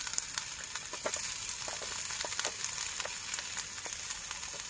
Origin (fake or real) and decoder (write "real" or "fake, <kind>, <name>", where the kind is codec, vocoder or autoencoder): real